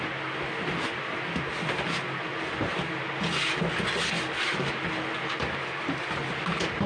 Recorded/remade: recorded